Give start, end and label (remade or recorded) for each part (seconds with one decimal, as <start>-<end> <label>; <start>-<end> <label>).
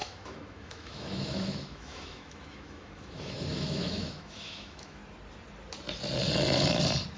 0.0-5.0 remade; 5.0-7.2 recorded